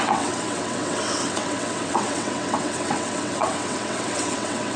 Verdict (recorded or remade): remade